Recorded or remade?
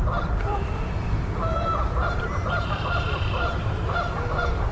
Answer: remade